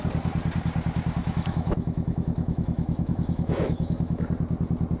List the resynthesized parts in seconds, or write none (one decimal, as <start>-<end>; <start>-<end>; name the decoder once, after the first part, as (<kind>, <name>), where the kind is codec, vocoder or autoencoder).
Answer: 1.2-4.2 (autoencoder, DAC-VAE)